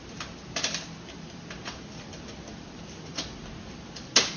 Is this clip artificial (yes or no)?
no